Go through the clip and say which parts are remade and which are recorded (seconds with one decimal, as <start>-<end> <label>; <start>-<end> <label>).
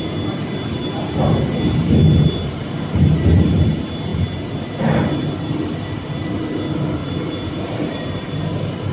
0.0-8.9 recorded